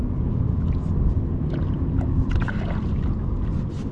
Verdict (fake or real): real